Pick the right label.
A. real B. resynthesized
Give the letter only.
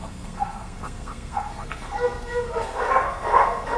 B